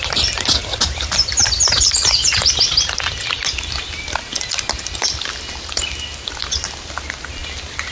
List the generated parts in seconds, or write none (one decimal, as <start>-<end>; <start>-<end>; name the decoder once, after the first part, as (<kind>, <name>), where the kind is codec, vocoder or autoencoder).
none